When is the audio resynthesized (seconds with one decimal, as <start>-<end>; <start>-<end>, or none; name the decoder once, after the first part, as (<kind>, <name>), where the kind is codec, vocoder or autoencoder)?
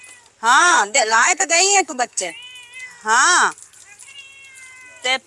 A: 0.6-2.3 (codec, SNAC)